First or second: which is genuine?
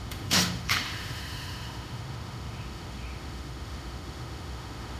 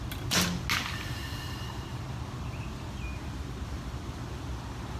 second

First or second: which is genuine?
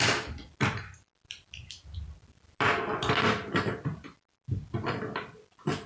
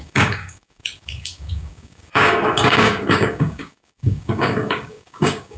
first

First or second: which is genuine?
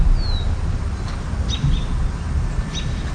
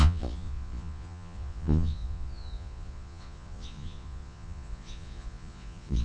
first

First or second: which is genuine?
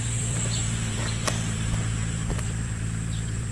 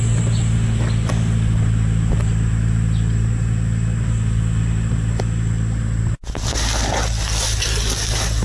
second